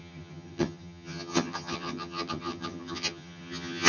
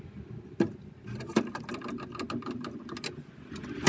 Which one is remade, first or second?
first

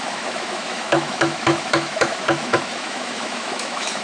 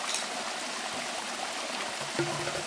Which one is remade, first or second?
first